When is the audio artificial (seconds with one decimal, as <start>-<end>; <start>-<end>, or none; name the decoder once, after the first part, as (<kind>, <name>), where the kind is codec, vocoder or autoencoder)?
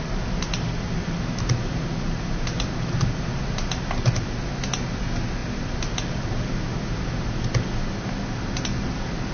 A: none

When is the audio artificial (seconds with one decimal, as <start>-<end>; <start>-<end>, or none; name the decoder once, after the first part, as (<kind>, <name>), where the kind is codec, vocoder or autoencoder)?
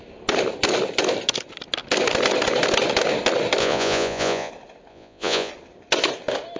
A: 3.6-4.5 (vocoder, Vocos); 4.9-5.5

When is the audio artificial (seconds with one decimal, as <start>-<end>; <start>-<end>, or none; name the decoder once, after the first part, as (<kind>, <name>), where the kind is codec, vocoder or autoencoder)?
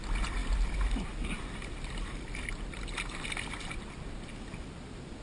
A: none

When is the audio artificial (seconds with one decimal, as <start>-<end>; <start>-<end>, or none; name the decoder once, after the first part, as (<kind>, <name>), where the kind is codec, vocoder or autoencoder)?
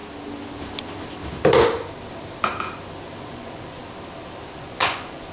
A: 3.2-3.8 (vocoder, Vocos); 4.6-5.3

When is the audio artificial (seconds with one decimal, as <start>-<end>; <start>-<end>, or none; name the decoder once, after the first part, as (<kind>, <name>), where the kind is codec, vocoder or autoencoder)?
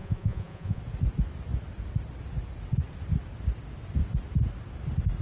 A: 0.0-0.8 (vocoder, Vocos)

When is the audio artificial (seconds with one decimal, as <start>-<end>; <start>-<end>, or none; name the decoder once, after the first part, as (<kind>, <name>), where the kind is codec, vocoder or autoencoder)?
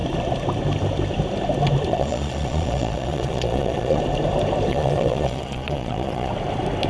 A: 1.9-4.0 (vocoder, Vocos); 4.7-6.3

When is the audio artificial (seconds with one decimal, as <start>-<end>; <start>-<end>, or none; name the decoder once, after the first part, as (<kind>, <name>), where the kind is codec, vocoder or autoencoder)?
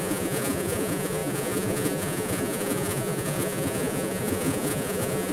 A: 0.0-5.3 (vocoder, Vocos)